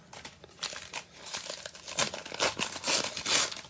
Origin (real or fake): real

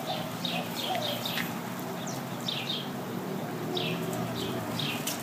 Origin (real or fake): fake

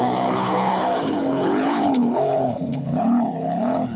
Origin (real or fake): fake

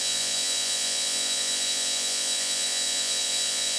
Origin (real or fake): fake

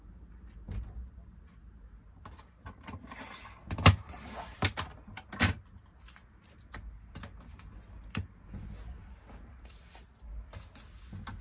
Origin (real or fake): real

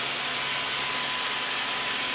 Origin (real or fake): real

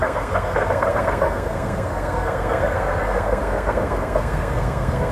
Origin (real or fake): fake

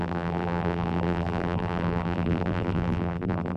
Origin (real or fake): fake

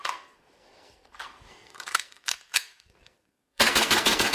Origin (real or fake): fake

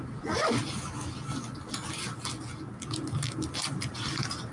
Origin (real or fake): real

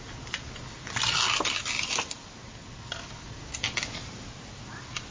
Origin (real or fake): real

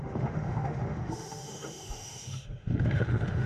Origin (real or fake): fake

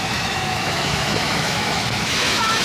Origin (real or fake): fake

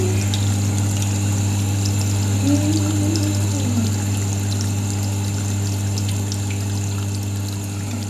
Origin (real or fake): real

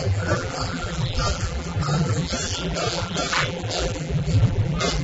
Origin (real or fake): fake